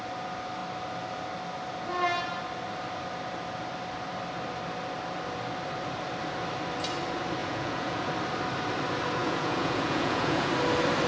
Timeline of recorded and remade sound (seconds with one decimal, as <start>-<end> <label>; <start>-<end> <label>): 0.0-7.4 recorded; 7.4-8.1 remade; 8.1-9.2 recorded; 9.2-10.5 remade; 10.5-11.1 recorded